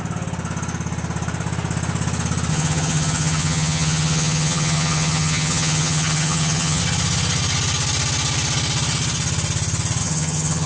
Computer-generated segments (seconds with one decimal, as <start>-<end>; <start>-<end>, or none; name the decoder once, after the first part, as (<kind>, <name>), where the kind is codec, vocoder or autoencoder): 2.5-6.8 (vocoder, HiFi-GAN); 10.0-10.7